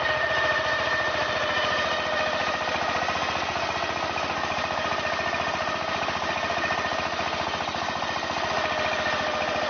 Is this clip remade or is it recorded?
recorded